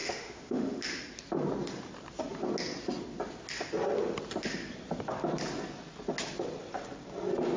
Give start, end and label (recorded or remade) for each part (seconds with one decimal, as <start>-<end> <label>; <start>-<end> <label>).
0.0-0.8 remade; 0.8-7.6 recorded